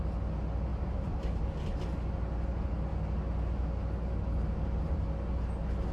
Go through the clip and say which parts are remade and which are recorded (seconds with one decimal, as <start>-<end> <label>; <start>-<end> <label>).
0.0-0.7 recorded; 0.7-1.6 remade; 1.6-5.9 recorded